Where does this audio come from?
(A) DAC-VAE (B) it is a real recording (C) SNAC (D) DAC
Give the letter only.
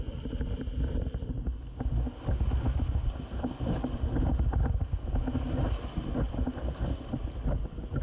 B